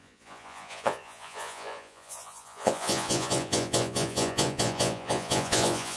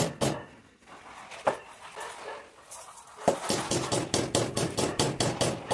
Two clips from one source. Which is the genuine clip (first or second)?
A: second